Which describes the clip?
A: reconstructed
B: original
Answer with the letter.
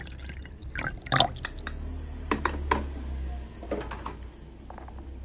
B